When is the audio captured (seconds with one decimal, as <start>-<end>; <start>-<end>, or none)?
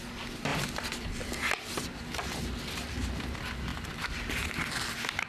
0.0-0.5; 1.5-3.7; 4.7-5.3